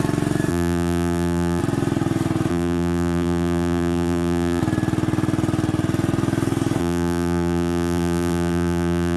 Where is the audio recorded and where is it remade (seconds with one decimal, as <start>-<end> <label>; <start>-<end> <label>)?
0.0-0.5 recorded; 0.5-1.6 remade; 1.6-2.5 recorded; 2.5-4.6 remade; 4.6-6.8 recorded; 6.8-9.2 remade